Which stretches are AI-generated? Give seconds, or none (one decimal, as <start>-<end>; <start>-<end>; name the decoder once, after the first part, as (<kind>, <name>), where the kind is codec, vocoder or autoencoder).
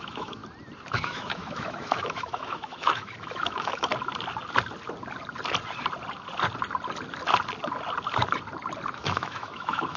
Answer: 0.0-0.4 (autoencoder, DAC-VAE); 0.9-3.9; 8.9-10.0